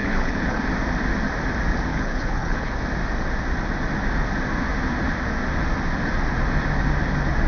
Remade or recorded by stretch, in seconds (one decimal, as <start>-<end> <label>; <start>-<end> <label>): 0.0-0.6 remade; 0.6-1.9 recorded; 1.9-2.7 remade; 2.7-7.5 recorded